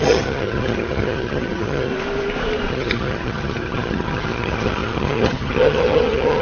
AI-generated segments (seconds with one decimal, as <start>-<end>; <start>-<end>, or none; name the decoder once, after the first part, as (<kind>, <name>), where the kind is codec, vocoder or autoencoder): 0.0-1.9 (vocoder, HiFi-GAN); 2.7-6.4

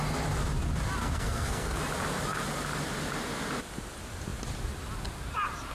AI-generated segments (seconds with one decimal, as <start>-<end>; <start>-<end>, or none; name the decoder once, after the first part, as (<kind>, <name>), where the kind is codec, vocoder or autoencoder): 1.0-1.8 (codec, SNAC)

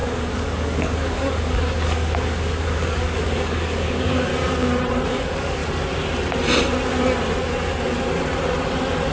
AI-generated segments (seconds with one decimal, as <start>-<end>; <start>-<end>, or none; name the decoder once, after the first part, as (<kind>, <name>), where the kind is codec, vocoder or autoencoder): 0.0-4.3 (codec, DAC); 5.1-5.6

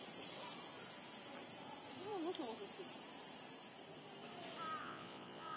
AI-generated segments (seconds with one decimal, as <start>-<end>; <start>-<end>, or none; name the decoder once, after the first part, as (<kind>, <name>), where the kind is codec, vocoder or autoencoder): 4.8-5.6 (vocoder, Vocos)

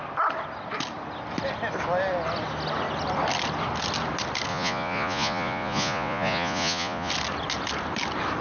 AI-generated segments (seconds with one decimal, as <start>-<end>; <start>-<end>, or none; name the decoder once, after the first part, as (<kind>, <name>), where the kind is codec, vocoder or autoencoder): 4.5-7.1 (vocoder, Vocos)

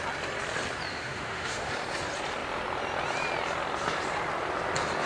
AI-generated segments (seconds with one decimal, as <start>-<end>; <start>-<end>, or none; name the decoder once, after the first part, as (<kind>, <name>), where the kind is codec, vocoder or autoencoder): 0.9-1.7 (autoencoder, DAC-VAE)

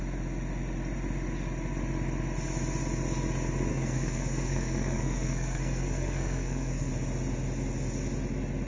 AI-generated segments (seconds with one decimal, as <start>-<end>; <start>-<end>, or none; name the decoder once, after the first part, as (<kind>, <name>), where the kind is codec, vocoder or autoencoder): 3.7-6.9 (codec, SNAC)